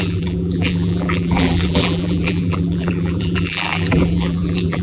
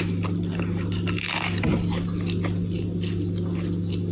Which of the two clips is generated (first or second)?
first